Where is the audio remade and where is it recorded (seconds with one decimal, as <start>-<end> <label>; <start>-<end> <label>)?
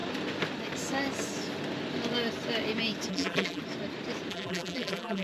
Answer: 0.0-3.1 recorded; 3.1-3.6 remade; 3.6-4.3 recorded; 4.3-5.2 remade